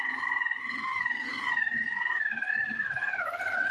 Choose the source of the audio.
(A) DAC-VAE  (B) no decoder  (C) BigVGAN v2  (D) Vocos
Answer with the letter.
C